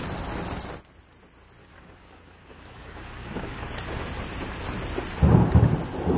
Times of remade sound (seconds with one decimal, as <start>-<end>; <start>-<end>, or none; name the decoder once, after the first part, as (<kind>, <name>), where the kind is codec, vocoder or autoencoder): 1.6-3.7 (codec, DAC)